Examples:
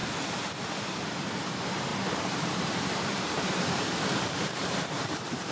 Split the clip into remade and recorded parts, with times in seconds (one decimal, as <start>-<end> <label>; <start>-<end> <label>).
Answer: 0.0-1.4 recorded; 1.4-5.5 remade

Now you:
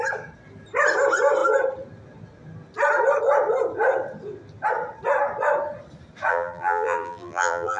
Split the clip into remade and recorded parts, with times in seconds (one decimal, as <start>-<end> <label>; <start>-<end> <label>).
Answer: 0.0-6.3 recorded; 6.3-7.8 remade

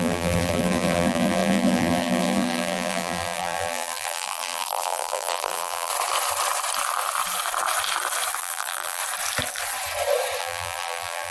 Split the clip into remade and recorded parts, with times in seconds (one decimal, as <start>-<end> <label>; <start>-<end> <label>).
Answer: 0.0-5.9 remade; 5.9-8.4 recorded; 8.4-9.0 remade; 9.0-10.4 recorded; 10.4-11.3 remade

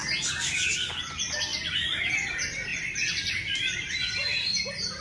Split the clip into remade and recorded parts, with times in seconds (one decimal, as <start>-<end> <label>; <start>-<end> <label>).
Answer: 0.0-1.5 recorded; 1.5-2.3 remade; 2.3-2.7 recorded; 2.7-3.6 remade; 3.6-5.0 recorded

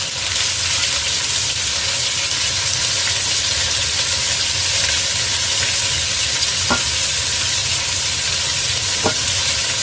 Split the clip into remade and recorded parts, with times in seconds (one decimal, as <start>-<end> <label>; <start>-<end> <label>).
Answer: 0.0-9.8 recorded